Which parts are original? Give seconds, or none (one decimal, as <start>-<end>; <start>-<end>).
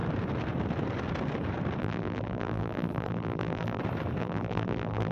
0.0-1.8; 3.8-4.2